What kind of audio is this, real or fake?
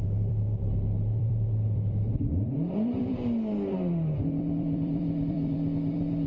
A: fake